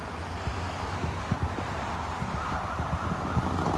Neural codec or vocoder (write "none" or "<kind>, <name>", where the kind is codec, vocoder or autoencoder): none